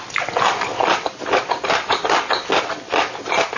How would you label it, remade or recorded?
recorded